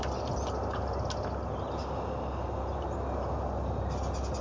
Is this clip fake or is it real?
real